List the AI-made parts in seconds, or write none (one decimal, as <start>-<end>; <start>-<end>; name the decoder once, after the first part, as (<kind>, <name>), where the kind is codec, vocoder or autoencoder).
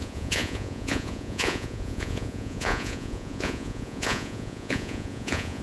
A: 0.0-5.6 (vocoder, Vocos)